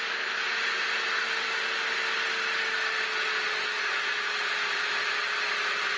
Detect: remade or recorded recorded